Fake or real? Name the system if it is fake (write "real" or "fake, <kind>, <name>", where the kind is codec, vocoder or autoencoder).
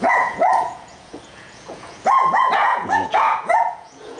fake, vocoder, Vocos